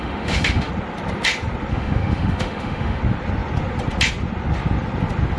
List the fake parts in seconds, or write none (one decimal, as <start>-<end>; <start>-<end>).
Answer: 0.0-0.7; 1.7-3.0